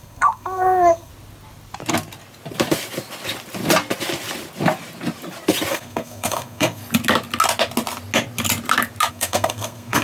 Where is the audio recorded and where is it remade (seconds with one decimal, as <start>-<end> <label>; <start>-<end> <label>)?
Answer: 0.0-1.1 remade; 1.1-5.7 recorded; 5.7-6.8 remade; 6.8-9.1 recorded; 9.1-10.0 remade